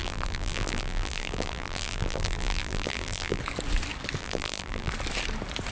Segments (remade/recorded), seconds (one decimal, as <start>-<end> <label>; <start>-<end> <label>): 0.0-3.4 remade; 3.4-4.2 recorded; 4.2-4.9 remade; 4.9-5.7 recorded